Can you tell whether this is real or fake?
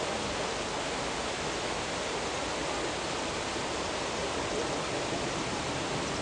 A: real